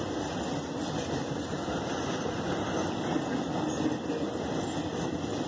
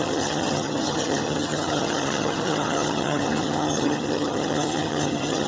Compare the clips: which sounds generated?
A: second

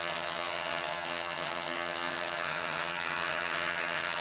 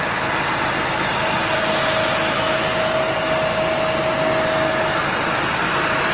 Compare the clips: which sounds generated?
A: first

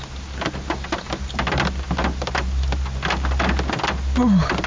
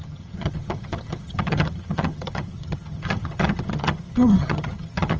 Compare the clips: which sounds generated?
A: second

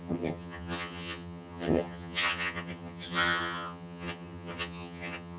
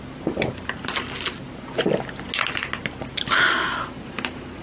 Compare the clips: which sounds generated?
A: first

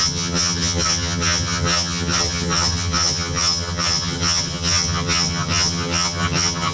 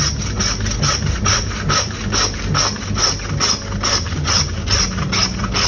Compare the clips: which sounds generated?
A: first